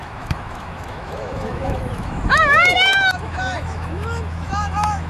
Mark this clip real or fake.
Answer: fake